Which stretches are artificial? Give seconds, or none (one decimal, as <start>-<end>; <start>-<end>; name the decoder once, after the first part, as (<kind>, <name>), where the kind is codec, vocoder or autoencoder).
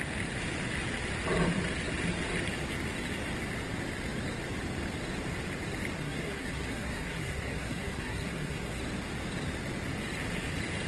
6.0-8.8 (codec, SNAC)